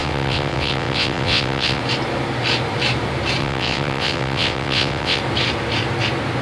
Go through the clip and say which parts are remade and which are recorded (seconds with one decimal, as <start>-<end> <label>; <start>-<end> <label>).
0.0-1.8 remade; 1.8-3.4 recorded; 3.4-5.2 remade; 5.2-6.4 recorded